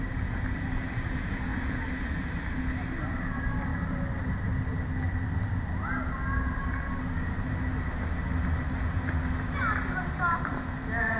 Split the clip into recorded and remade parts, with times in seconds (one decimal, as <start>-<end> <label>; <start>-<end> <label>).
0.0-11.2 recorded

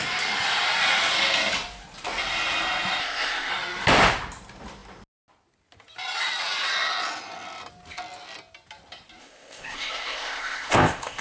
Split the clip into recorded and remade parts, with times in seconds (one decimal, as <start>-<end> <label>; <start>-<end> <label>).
0.0-3.0 recorded; 3.0-3.5 remade; 3.5-9.2 recorded; 9.2-11.2 remade

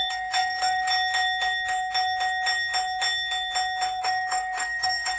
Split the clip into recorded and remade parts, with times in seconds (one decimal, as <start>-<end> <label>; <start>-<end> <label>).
0.0-0.9 remade; 0.9-4.0 recorded; 4.0-5.2 remade